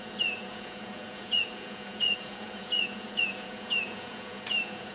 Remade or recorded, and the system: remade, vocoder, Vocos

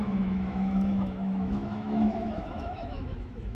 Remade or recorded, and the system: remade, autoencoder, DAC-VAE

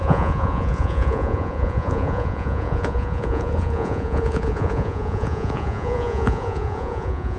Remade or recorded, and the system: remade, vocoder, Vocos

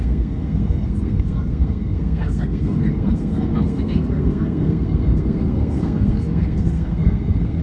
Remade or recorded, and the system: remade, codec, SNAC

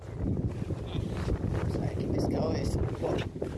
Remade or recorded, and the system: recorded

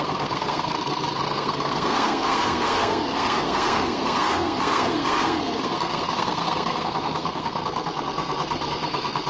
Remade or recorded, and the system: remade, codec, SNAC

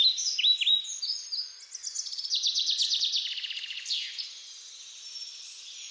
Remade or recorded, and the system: recorded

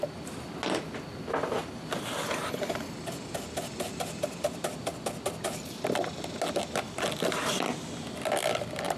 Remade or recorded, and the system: recorded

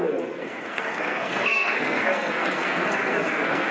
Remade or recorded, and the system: remade, codec, SNAC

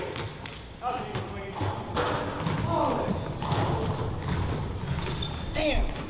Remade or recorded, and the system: recorded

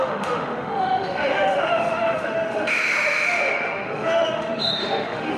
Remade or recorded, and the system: remade, autoencoder, DAC-VAE